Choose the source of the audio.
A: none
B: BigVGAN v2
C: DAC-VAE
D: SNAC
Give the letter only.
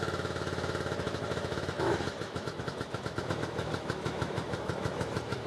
C